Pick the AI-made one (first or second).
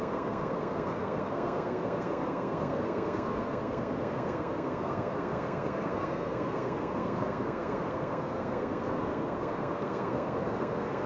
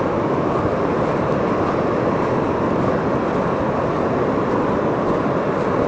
first